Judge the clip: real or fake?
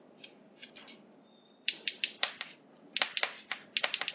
real